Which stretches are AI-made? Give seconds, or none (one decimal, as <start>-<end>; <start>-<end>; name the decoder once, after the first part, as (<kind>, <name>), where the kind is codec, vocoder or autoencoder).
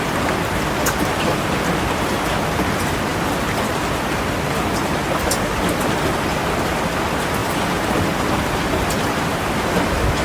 none